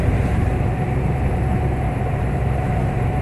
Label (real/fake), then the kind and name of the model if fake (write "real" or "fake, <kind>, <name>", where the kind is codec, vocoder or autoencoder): fake, vocoder, BigVGAN v2